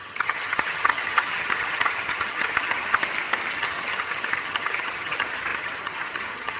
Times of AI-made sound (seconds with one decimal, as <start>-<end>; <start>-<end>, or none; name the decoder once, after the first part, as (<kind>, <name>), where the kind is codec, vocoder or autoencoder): 0.0-3.0 (vocoder, HiFi-GAN); 3.5-6.6